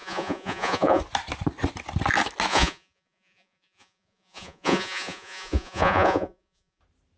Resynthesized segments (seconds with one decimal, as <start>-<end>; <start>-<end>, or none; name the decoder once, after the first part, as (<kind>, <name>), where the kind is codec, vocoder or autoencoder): 0.0-1.0 (vocoder, Vocos); 2.5-6.8